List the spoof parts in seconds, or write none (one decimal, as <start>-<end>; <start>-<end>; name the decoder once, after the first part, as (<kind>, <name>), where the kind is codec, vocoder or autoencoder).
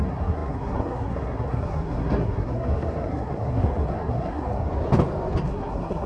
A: 0.0-4.7 (codec, SNAC); 5.4-6.1